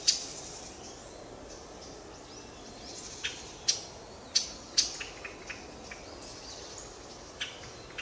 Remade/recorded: recorded